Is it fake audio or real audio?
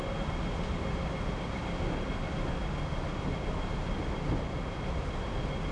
real